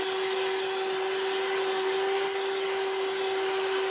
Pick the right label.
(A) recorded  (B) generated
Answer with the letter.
A